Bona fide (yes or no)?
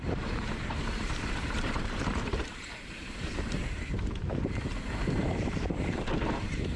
no